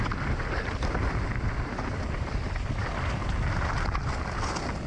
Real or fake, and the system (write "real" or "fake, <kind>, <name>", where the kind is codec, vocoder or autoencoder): real